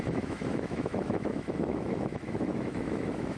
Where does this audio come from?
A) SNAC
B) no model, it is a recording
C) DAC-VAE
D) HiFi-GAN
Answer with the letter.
C